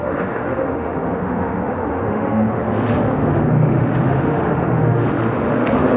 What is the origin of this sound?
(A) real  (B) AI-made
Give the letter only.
B